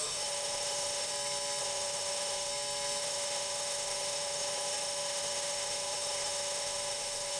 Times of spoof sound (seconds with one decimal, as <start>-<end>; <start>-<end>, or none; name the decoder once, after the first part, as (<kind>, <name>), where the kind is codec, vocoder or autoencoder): 0.0-1.1 (autoencoder, DAC-VAE); 1.6-2.5; 3.0-7.4